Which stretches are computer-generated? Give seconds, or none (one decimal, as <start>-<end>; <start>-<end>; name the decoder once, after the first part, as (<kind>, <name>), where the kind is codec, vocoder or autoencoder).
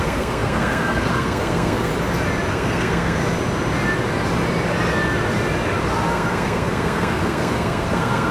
0.0-1.9 (codec, SNAC); 2.5-3.2; 6.1-8.3